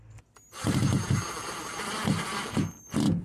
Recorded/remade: recorded